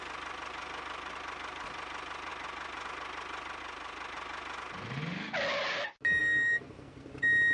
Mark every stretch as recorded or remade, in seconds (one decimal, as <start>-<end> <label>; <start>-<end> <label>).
0.0-6.2 recorded; 6.2-7.1 remade; 7.1-7.5 recorded